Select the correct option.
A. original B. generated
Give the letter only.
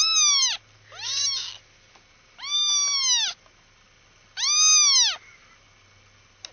A